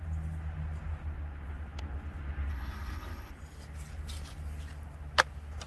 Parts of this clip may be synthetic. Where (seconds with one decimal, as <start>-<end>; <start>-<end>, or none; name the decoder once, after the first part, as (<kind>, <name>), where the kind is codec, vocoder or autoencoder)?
2.5-3.3 (codec, HILCodec)